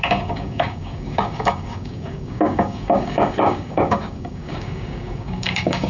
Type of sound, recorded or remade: remade